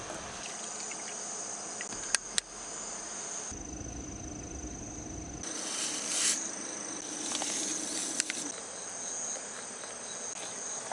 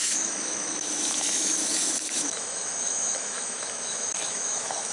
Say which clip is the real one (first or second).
first